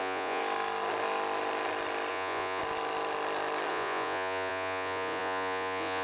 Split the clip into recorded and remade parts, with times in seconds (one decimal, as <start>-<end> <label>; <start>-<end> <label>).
0.0-0.4 remade; 0.4-2.1 recorded; 2.1-2.6 remade; 2.6-3.7 recorded; 3.7-6.0 remade